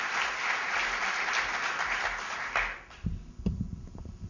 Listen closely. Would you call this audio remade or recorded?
recorded